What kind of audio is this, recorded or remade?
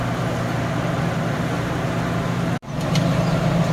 recorded